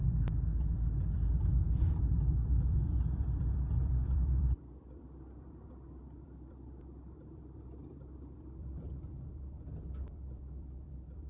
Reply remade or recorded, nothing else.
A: remade